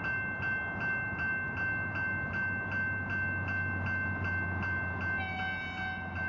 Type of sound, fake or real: real